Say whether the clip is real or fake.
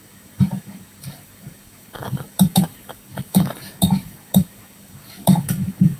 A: fake